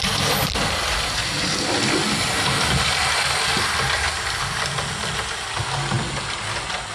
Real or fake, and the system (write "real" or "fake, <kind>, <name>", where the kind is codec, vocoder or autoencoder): real